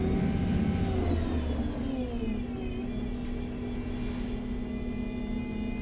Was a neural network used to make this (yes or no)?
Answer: no